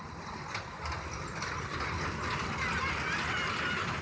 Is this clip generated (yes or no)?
no